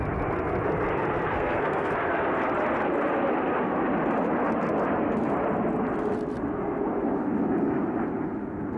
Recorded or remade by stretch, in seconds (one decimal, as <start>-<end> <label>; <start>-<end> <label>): 0.0-1.3 recorded; 1.3-1.9 remade; 1.9-8.8 recorded